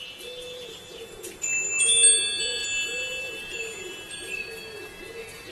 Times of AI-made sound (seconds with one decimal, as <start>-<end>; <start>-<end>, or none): none